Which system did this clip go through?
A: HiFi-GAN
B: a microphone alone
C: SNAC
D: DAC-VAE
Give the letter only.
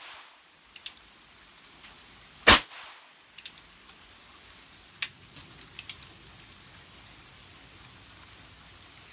B